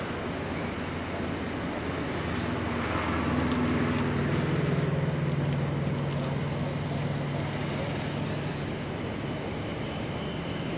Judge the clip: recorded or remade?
recorded